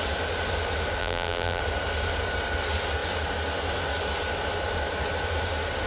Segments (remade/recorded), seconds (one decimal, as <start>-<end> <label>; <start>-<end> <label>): 0.0-1.0 recorded; 1.0-1.6 remade; 1.6-5.9 recorded